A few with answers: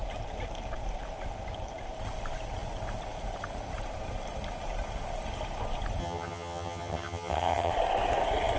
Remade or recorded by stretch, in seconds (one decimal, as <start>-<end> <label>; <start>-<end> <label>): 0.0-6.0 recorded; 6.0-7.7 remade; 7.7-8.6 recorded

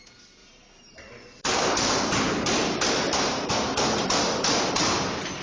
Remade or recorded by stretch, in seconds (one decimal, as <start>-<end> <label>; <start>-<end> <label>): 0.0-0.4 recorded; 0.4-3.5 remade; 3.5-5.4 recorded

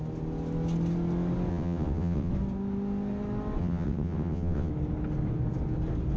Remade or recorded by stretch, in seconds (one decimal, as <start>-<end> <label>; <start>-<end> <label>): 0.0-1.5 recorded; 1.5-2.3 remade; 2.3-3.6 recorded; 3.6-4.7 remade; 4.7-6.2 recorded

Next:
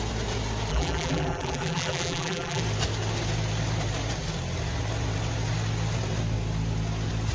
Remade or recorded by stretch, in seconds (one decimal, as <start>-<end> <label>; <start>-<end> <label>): 0.0-0.7 recorded; 0.7-2.6 remade; 2.6-7.3 recorded

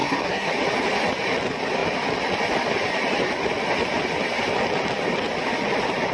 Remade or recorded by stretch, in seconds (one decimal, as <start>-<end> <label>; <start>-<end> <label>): 0.0-0.5 remade; 0.5-6.1 recorded

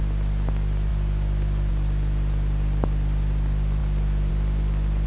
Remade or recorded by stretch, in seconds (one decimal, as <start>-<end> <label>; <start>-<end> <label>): 0.0-5.1 recorded